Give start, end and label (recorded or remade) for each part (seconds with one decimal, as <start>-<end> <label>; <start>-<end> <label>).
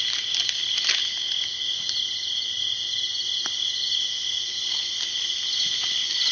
0.0-6.3 recorded